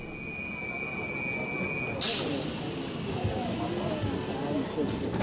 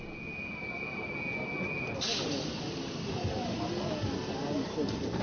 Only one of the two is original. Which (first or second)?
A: first